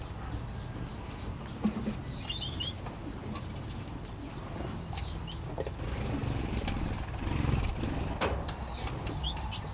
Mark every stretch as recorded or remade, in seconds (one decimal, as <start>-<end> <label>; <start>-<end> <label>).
0.0-9.7 recorded